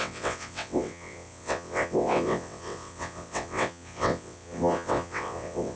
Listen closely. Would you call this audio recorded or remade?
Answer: remade